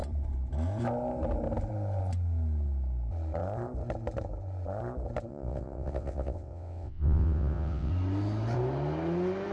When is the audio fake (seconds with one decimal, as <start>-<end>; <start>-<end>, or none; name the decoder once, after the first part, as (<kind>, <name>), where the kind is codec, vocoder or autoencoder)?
5.3-7.9 (vocoder, WaveNeXt)